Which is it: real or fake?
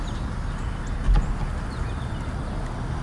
real